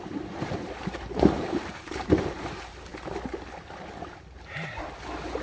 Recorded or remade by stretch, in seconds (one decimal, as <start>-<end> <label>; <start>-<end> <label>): 0.0-2.9 remade; 2.9-4.0 recorded; 4.0-5.4 remade